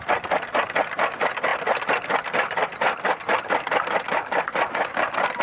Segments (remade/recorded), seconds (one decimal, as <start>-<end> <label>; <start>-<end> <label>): 0.0-5.4 recorded